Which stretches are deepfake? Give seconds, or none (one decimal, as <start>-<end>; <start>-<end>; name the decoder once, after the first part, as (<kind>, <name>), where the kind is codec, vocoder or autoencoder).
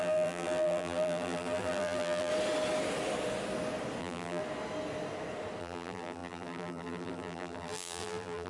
0.0-2.3 (vocoder, BigVGAN v2); 4.0-4.4; 5.6-8.5